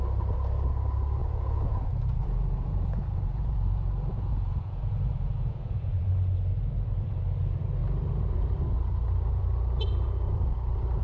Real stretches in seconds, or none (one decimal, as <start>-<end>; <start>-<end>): 0.0-1.2; 6.1-11.0

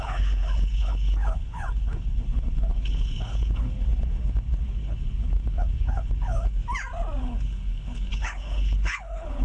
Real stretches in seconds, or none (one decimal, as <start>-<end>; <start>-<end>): 6.6-7.2

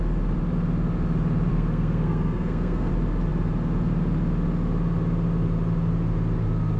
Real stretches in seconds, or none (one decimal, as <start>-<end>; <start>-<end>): 0.0-1.5; 2.9-6.8

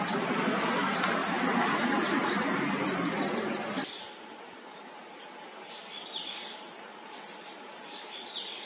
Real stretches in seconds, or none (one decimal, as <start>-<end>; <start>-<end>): 0.0-8.7

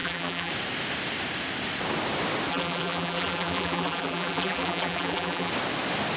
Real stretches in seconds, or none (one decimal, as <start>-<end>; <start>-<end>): 0.5-2.5; 5.5-6.2

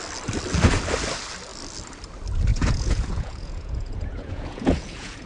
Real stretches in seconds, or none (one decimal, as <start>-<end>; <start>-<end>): 0.0-2.5

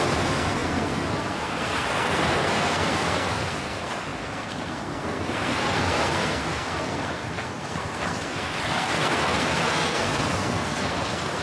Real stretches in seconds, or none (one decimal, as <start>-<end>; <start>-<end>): none